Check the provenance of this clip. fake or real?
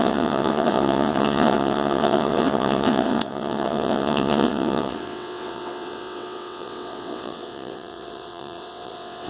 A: fake